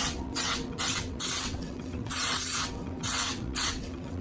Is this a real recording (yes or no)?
no